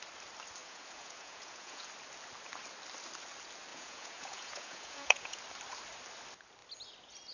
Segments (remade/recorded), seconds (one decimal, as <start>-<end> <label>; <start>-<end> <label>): 0.0-0.6 recorded; 0.6-1.9 remade; 1.9-3.7 recorded; 3.7-5.4 remade; 5.4-7.3 recorded